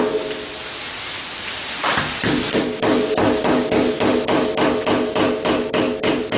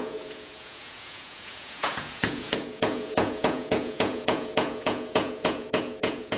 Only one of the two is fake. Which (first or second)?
second